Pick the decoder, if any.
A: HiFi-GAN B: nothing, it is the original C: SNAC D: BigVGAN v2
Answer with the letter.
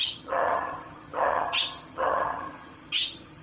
A